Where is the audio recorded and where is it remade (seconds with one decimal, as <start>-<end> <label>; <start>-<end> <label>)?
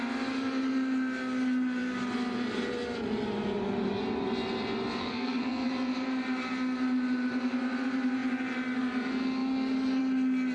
0.0-5.0 recorded; 5.0-5.7 remade; 5.7-10.5 recorded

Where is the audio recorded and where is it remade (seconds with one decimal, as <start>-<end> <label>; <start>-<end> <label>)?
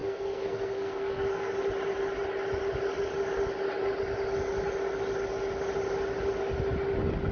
0.0-1.5 remade; 1.5-7.3 recorded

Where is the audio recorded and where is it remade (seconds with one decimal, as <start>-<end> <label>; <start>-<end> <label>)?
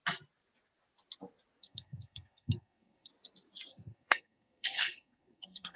0.0-1.6 recorded; 1.6-3.1 remade; 3.1-3.7 recorded; 3.7-5.8 remade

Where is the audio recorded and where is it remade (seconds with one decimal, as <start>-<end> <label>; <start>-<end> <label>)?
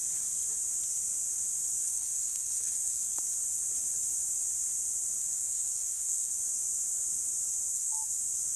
0.0-1.8 recorded; 1.8-3.2 remade; 3.2-5.2 recorded; 5.2-6.4 remade; 6.4-7.7 recorded; 7.7-8.2 remade; 8.2-8.6 recorded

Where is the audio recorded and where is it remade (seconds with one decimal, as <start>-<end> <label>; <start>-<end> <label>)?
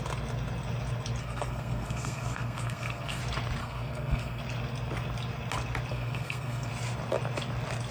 0.0-1.2 recorded; 1.2-3.2 remade; 3.2-3.6 recorded; 3.6-4.4 remade; 4.4-5.9 recorded; 5.9-6.7 remade; 6.7-7.9 recorded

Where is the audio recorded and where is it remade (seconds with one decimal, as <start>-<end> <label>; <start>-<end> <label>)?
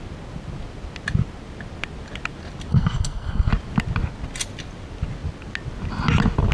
0.0-2.7 recorded; 2.7-3.5 remade; 3.5-6.5 recorded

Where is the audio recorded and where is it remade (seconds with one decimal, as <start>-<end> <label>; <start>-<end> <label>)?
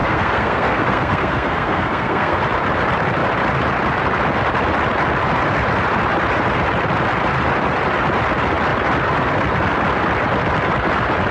0.0-2.4 remade; 2.4-11.3 recorded